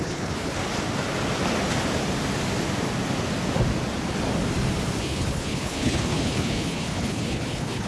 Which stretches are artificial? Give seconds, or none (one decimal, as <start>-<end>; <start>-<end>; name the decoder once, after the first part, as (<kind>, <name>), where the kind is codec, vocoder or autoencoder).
0.0-0.6 (codec, HILCodec); 5.0-7.9